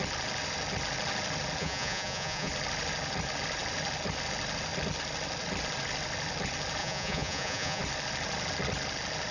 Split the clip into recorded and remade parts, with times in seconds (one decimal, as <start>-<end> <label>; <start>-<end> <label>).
0.0-1.6 recorded; 1.6-2.5 remade; 2.5-6.8 recorded; 6.8-7.8 remade; 7.8-9.3 recorded